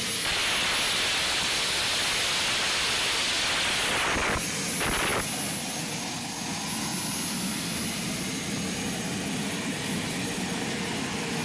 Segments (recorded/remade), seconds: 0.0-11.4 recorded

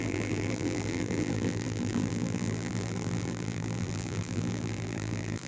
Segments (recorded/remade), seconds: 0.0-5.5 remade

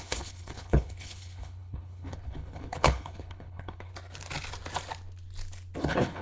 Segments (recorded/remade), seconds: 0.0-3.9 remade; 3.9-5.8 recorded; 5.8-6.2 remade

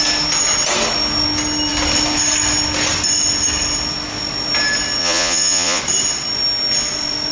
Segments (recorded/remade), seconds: 0.0-5.0 recorded; 5.0-5.8 remade; 5.8-7.3 recorded

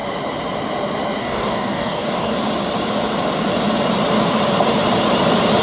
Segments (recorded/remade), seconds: 0.0-1.2 recorded; 1.2-2.3 remade; 2.3-5.6 recorded

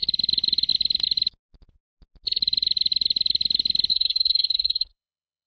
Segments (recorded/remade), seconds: 0.0-3.9 recorded; 3.9-5.5 remade